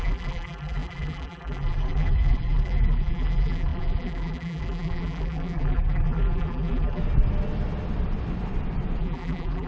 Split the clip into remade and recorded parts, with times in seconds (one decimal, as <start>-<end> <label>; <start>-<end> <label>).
0.0-7.0 remade; 7.0-9.0 recorded; 9.0-9.7 remade